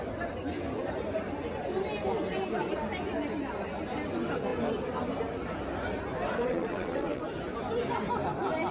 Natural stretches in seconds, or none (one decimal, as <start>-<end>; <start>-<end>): 0.0-6.5; 7.2-8.7